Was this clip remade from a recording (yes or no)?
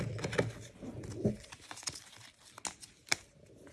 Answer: no